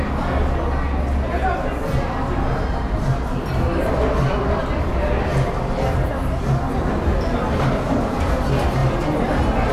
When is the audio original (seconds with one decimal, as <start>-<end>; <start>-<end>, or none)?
0.0-9.7